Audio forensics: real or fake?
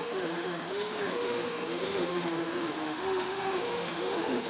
fake